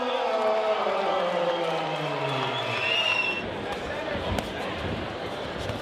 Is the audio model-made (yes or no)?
no